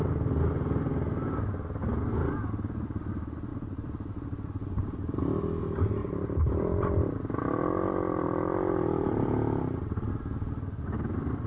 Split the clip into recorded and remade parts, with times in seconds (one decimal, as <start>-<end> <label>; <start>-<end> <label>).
0.0-1.8 recorded; 1.8-2.5 remade; 2.5-3.5 recorded; 3.5-5.2 remade; 5.2-6.0 recorded; 6.0-10.1 remade; 10.1-11.5 recorded